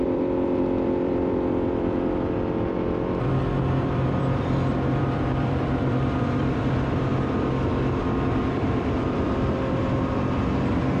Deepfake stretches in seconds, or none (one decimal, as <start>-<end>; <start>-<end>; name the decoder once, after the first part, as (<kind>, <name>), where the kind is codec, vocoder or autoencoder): 0.0-7.1 (vocoder, BigVGAN v2); 8.5-11.0